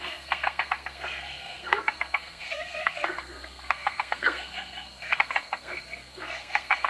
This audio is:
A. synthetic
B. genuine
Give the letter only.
A